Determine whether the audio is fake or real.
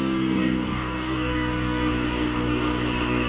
fake